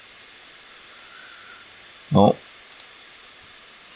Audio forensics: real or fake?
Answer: real